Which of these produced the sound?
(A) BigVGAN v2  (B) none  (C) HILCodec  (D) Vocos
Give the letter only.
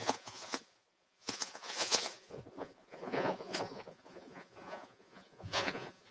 D